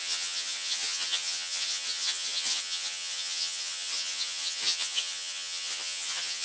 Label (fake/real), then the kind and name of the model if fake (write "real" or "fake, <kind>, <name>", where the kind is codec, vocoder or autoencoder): fake, vocoder, HiFi-GAN